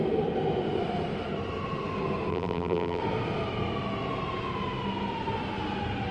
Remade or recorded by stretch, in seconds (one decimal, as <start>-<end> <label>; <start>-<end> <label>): 0.0-2.3 recorded; 2.3-3.0 remade; 3.0-6.1 recorded

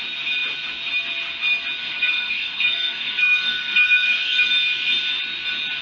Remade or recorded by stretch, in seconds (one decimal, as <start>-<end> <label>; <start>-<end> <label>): 0.0-1.8 recorded; 1.8-4.5 remade; 4.5-5.8 recorded

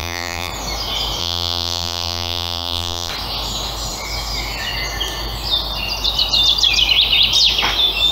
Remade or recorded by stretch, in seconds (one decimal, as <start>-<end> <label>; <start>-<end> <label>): 0.0-0.5 remade; 0.5-1.2 recorded; 1.2-3.1 remade; 3.1-8.1 recorded